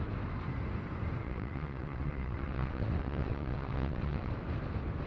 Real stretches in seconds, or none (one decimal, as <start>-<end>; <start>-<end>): 0.0-1.2; 4.3-5.1